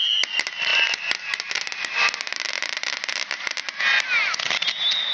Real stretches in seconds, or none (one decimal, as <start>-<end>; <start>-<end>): 0.0-5.1